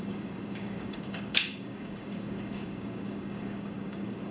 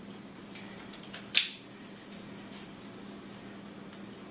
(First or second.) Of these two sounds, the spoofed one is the first